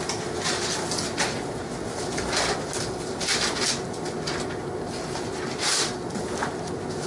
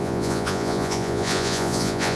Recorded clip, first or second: first